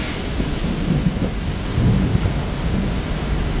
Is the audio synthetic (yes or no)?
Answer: no